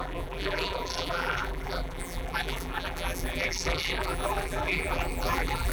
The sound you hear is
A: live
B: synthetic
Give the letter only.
B